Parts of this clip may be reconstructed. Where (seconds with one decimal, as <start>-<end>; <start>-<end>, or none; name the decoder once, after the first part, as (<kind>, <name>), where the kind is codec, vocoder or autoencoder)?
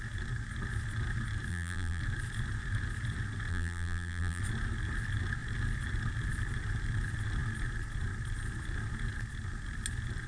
1.5-2.0 (vocoder, BigVGAN v2); 3.5-4.4